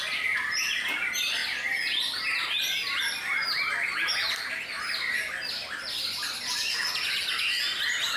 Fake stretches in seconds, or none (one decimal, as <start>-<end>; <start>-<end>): none